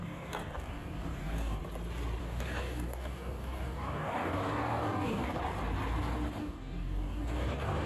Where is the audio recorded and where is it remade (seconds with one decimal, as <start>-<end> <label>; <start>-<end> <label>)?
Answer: 0.0-1.6 remade; 1.6-2.2 recorded; 2.2-5.4 remade; 5.4-6.4 recorded; 6.4-7.9 remade